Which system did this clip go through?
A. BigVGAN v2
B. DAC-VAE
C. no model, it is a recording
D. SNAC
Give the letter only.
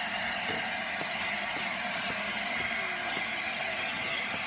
C